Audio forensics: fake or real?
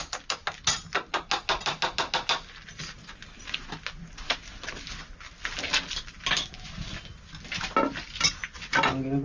real